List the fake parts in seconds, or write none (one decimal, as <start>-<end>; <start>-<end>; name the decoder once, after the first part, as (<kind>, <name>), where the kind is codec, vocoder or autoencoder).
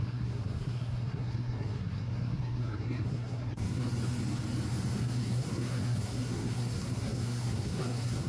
0.0-3.9 (codec, SNAC); 5.0-8.3